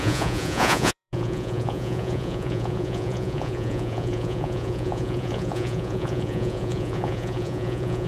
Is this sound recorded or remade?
remade